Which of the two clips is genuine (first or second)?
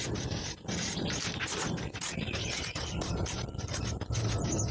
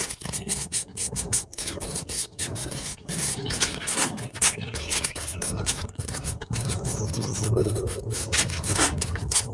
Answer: first